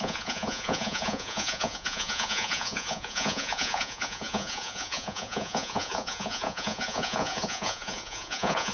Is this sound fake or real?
fake